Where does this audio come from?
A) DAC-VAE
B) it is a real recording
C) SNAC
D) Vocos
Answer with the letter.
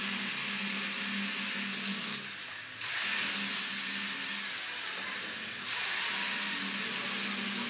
B